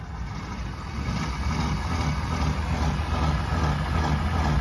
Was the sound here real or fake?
real